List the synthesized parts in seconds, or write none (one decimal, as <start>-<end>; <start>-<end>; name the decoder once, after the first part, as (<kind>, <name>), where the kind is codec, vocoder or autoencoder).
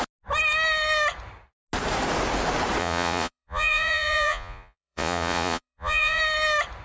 2.8-6.2 (vocoder, Vocos)